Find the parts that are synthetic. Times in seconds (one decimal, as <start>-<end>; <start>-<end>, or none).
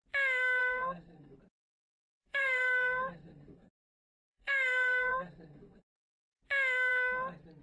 0.6-1.4; 2.0-6.4